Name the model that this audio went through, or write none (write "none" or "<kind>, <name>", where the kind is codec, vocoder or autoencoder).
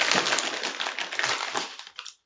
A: vocoder, BigVGAN v2